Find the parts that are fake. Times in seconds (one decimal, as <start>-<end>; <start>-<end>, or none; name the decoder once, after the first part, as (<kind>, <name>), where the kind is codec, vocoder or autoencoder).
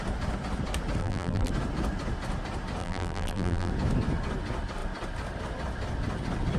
1.0-1.5 (vocoder, BigVGAN v2); 2.8-3.7